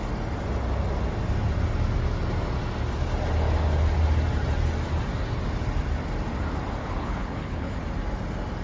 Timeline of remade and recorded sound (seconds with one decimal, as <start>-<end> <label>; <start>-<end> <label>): 0.0-6.8 recorded; 6.8-7.8 remade; 7.8-8.6 recorded